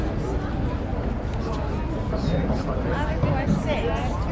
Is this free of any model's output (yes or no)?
yes